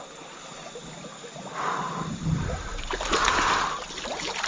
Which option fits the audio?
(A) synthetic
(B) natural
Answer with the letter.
B